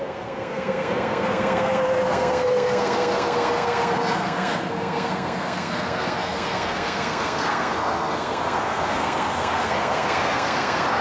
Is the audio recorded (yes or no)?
no